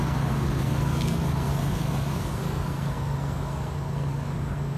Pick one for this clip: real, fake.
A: fake